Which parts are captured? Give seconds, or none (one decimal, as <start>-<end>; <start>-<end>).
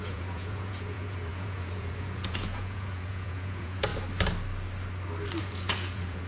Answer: 3.9-5.4